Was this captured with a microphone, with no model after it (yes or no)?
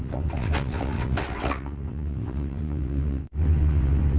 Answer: no